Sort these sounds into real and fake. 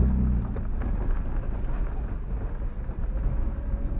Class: real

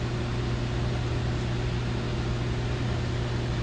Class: real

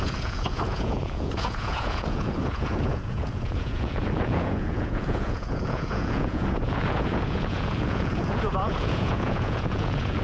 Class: fake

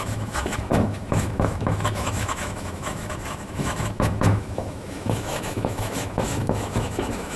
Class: fake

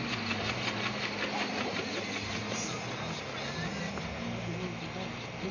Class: real